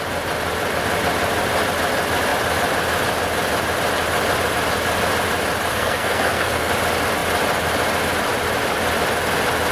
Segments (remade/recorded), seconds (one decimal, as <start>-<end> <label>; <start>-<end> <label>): 0.0-5.7 recorded; 5.7-6.7 remade; 6.7-9.7 recorded